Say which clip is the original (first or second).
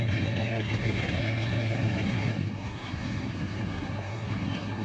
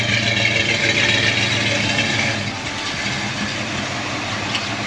second